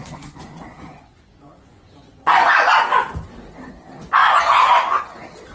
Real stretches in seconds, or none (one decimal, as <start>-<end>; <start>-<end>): 2.7-4.2; 5.0-5.5